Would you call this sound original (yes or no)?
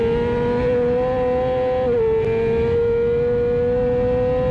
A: yes